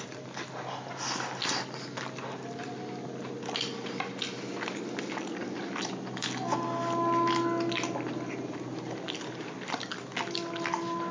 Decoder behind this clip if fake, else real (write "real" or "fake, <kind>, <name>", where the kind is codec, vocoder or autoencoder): real